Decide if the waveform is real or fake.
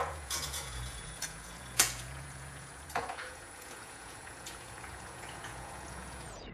fake